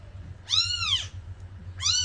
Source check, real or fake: fake